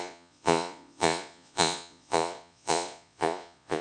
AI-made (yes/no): yes